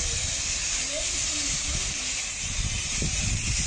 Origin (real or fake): real